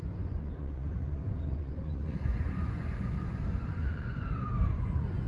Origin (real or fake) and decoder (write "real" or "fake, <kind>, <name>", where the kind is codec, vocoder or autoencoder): fake, vocoder, Vocos